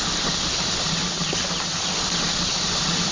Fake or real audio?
real